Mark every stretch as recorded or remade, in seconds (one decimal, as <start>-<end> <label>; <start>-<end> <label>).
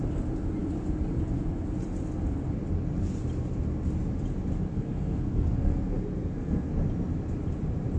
0.0-4.7 recorded; 4.7-6.7 remade; 6.7-8.0 recorded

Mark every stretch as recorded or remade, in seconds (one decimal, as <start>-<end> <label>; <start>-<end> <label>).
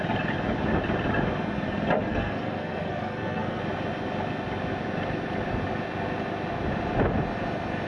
0.0-2.1 recorded; 2.1-3.6 remade; 3.6-7.9 recorded